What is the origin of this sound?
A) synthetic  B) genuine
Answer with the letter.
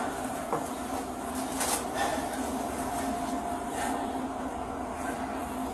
B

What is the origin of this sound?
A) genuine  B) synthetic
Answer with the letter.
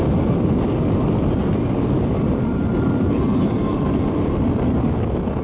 A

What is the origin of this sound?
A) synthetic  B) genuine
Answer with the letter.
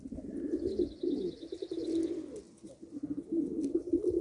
B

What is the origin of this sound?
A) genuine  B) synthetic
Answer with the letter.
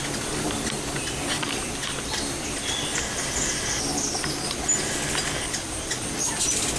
A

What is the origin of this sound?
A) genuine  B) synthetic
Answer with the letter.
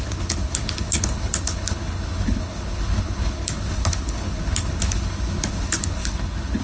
B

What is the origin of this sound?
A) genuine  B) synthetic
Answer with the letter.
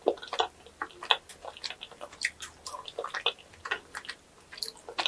A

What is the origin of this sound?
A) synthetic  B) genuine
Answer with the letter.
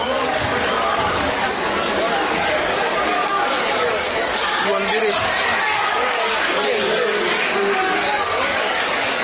A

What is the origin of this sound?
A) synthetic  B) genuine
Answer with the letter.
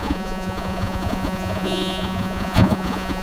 A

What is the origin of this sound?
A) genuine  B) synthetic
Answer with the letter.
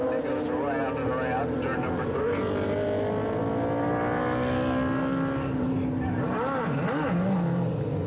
A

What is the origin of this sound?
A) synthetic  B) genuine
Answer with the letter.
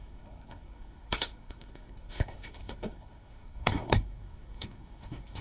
A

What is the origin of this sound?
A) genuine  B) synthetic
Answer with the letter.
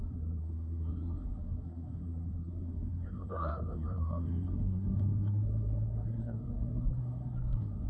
B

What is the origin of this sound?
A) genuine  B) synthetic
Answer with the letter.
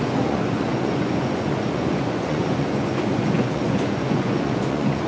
B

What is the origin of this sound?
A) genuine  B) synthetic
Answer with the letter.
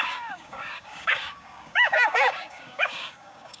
B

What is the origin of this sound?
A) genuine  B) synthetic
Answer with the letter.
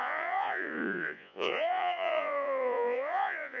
B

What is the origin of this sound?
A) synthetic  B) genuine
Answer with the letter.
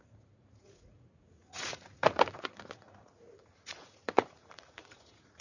A